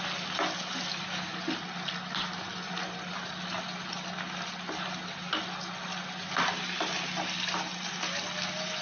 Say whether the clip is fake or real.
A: real